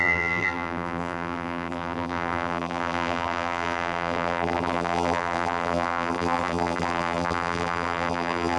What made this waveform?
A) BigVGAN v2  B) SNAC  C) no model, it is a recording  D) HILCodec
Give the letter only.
A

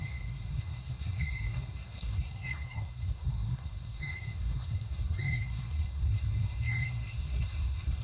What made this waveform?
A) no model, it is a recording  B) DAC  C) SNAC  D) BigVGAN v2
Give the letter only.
C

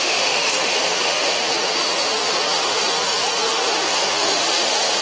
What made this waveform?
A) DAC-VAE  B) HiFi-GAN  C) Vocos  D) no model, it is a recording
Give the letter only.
A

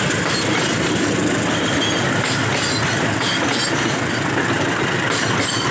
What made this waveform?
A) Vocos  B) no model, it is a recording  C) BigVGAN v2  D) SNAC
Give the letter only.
B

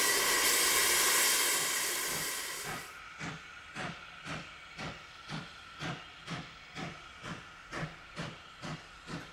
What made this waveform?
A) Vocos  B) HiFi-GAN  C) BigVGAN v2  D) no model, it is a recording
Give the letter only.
D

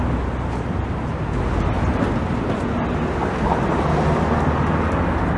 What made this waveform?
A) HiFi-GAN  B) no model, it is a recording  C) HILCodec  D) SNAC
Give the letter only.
B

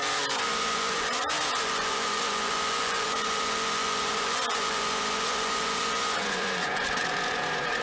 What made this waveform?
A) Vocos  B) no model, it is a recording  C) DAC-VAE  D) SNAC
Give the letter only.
A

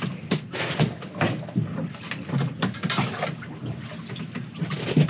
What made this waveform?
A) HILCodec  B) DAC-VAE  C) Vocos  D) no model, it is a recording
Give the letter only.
D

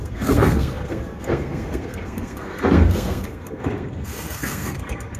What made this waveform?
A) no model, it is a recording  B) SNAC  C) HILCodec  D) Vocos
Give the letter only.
B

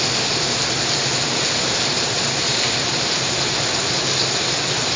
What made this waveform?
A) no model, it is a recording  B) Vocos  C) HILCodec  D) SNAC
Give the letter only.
A